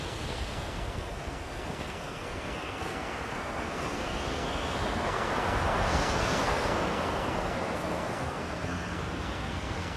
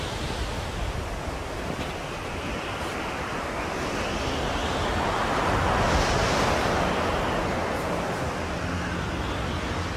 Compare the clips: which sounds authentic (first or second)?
second